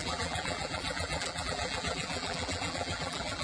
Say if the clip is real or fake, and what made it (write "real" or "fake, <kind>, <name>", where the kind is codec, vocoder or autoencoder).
fake, vocoder, BigVGAN v2